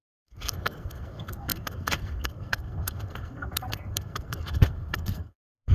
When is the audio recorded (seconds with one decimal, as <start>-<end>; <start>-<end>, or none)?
none